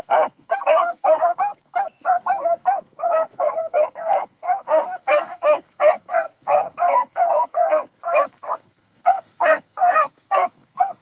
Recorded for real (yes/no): no